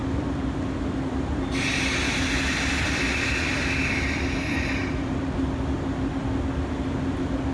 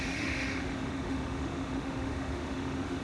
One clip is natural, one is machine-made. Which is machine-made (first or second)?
second